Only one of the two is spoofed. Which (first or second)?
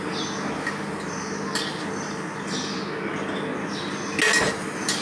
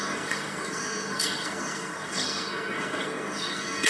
second